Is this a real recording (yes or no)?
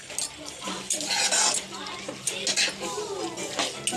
yes